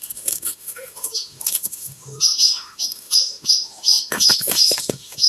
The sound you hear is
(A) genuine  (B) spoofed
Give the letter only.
B